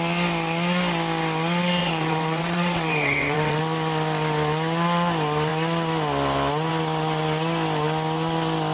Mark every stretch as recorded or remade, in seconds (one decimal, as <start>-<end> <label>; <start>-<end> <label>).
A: 0.0-1.8 recorded; 1.8-3.6 remade; 3.6-8.7 recorded